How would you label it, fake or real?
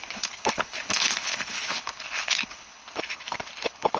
fake